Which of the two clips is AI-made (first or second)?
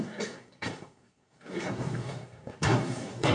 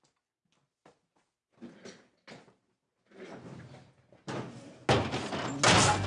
first